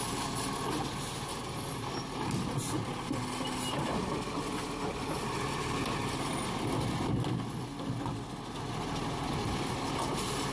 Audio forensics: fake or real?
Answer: real